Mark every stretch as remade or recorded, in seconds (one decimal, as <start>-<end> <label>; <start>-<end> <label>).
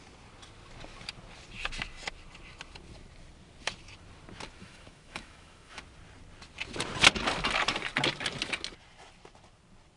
0.0-4.6 recorded; 4.6-5.8 remade; 5.8-10.0 recorded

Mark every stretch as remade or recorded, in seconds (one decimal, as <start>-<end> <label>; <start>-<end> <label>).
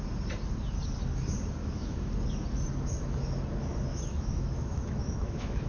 0.0-1.6 recorded; 1.6-2.1 remade; 2.1-3.9 recorded; 3.9-5.7 remade